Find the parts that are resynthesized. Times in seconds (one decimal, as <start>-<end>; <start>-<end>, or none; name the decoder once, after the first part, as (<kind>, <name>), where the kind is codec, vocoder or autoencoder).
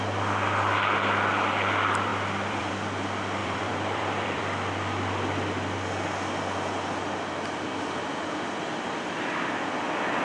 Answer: 2.1-2.7 (vocoder, BigVGAN v2); 3.4-4.4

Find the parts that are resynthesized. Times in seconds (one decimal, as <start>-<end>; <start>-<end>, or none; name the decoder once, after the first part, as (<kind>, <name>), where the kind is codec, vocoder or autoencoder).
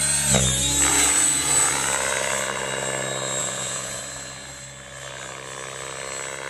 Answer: 0.9-1.7 (vocoder, Vocos); 3.4-4.0